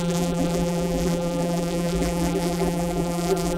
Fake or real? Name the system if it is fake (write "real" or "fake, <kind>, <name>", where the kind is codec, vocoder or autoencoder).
fake, vocoder, BigVGAN v2